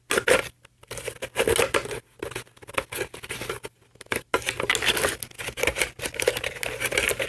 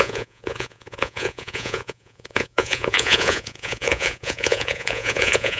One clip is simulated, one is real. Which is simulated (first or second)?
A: second